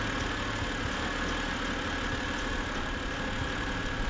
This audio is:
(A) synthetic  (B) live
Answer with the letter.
B